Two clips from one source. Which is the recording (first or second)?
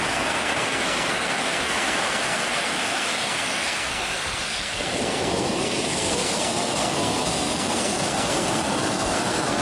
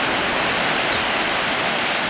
second